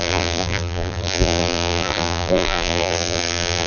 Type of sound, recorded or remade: remade